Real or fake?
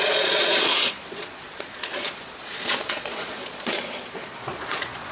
fake